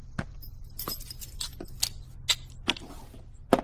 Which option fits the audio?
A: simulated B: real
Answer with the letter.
B